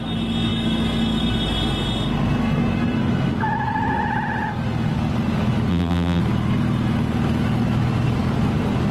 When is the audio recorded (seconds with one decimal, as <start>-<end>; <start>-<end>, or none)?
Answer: 0.0-5.7; 6.2-8.9